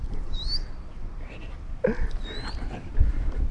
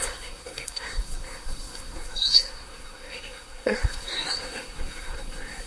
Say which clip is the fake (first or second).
second